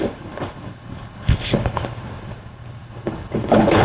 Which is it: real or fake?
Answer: fake